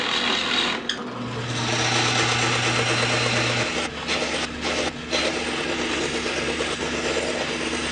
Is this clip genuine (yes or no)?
yes